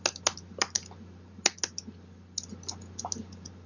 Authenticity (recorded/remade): recorded